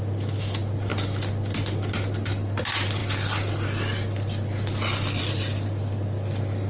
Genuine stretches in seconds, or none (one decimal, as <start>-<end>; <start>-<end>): 0.0-6.7